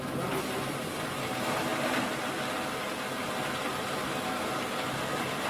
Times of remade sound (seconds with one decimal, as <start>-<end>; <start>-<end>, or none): none